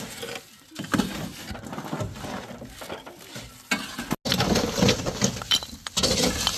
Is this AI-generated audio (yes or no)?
no